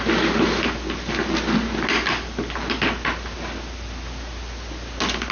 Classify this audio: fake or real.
real